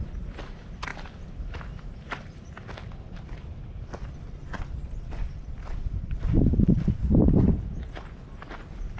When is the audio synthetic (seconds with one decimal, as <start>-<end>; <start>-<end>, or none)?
0.9-5.6; 7.0-7.9